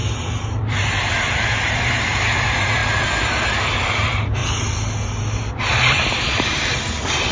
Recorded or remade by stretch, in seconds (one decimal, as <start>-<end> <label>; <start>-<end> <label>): 0.0-4.4 remade; 4.4-5.5 recorded; 5.5-7.3 remade